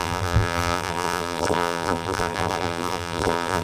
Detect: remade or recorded remade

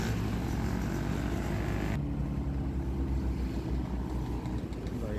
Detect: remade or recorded recorded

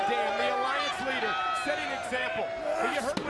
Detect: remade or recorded recorded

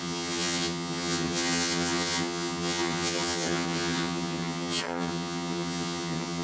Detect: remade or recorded remade